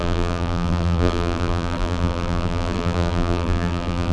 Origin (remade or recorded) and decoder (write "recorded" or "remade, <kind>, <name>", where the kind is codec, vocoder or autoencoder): remade, vocoder, BigVGAN v2